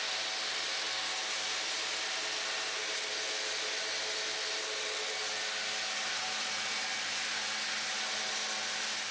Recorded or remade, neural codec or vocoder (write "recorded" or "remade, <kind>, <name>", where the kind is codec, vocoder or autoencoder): recorded